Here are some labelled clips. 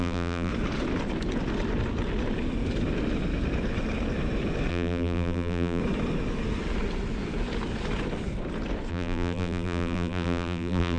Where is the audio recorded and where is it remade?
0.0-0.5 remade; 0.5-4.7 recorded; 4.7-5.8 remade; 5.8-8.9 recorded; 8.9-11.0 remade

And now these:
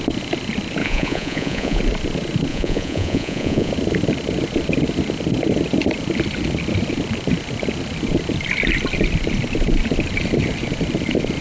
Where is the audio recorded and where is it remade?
0.0-0.8 recorded; 0.8-1.8 remade; 1.8-2.5 recorded; 2.5-3.7 remade; 3.7-11.4 recorded

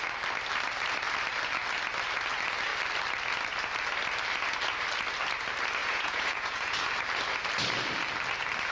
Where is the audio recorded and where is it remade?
0.0-5.8 recorded; 5.8-6.7 remade; 6.7-8.7 recorded

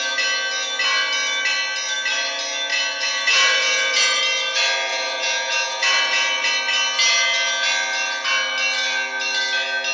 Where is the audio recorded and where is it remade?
0.0-2.7 recorded; 2.7-4.2 remade; 4.2-4.9 recorded; 4.9-6.5 remade; 6.5-9.9 recorded

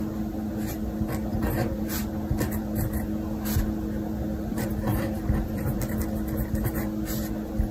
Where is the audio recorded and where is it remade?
0.0-1.3 recorded; 1.3-2.1 remade; 2.1-4.5 recorded; 4.5-5.8 remade; 5.8-7.7 recorded

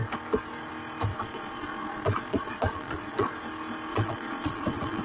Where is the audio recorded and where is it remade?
0.0-1.1 recorded; 1.1-3.3 remade; 3.3-3.9 recorded; 3.9-5.0 remade

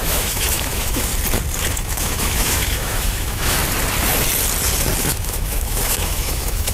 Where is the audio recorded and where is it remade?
0.0-1.1 remade; 1.1-1.7 recorded; 1.7-3.6 remade; 3.6-5.0 recorded; 5.0-6.7 remade

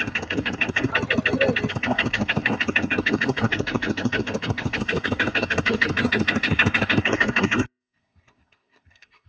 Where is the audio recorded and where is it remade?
0.0-0.9 remade; 0.9-1.7 recorded; 1.7-9.3 remade